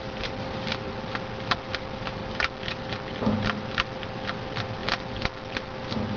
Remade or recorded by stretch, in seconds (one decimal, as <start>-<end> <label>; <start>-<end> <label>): 0.0-2.2 recorded; 2.2-3.2 remade; 3.2-6.2 recorded